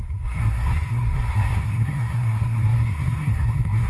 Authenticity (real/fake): fake